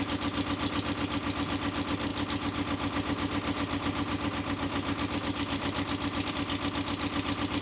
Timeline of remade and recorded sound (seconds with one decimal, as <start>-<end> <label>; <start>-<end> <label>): 0.0-7.6 recorded